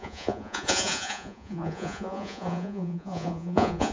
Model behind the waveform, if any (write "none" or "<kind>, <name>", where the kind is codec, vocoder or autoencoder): vocoder, Vocos